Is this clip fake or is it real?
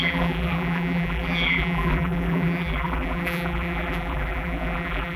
fake